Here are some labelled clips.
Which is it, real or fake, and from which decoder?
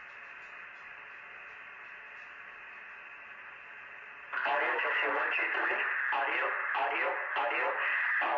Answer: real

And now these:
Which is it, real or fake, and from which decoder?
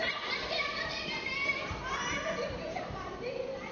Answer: fake, vocoder, BigVGAN v2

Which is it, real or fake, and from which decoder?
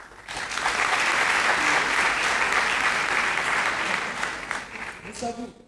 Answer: real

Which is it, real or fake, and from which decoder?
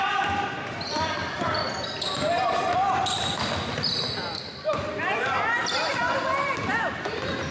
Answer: fake, vocoder, BigVGAN v2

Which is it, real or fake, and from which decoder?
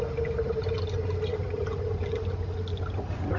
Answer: real